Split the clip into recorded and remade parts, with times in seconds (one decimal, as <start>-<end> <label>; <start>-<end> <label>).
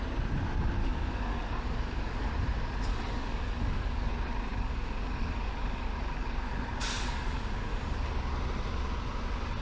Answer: 0.0-0.8 recorded; 0.8-2.3 remade; 2.3-2.9 recorded; 2.9-4.1 remade; 4.1-4.5 recorded; 4.5-8.1 remade; 8.1-9.6 recorded